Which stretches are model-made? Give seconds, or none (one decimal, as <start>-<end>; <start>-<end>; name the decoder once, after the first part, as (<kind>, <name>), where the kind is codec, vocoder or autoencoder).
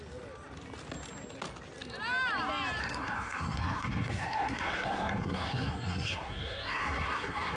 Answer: 2.8-7.6 (codec, SNAC)